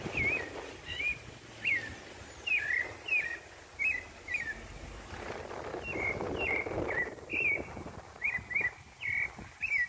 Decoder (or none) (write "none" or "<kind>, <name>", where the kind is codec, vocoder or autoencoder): none